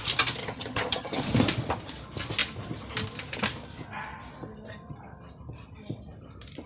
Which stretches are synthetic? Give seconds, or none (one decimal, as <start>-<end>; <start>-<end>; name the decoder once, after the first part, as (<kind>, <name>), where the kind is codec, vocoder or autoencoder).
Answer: 0.4-1.3 (vocoder, HiFi-GAN)

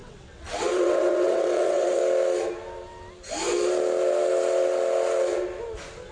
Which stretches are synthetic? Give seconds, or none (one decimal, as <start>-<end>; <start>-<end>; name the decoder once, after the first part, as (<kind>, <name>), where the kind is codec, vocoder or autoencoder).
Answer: 0.0-2.0 (vocoder, WaveNeXt)

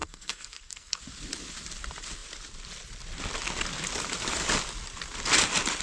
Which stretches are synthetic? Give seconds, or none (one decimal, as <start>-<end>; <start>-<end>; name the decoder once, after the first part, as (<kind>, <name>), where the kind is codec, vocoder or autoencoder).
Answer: 0.0-1.0 (codec, SNAC)